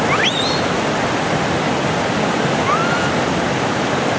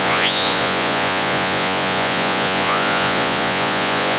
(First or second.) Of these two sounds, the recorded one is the first